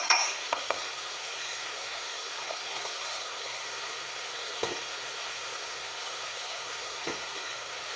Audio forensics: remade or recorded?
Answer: remade